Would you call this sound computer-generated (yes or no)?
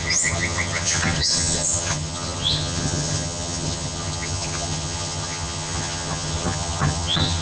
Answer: yes